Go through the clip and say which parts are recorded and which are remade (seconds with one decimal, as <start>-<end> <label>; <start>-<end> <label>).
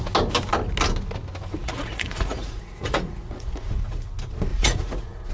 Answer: 0.0-1.6 recorded; 1.6-4.1 remade; 4.1-4.5 recorded; 4.5-5.3 remade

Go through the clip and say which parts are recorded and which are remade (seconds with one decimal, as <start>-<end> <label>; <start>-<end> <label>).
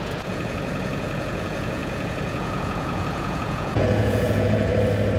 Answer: 0.0-4.7 remade; 4.7-5.2 recorded